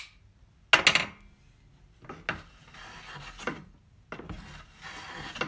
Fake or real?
real